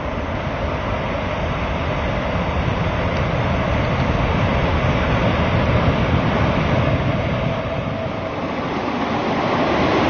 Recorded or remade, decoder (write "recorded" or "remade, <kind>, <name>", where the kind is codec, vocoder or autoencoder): recorded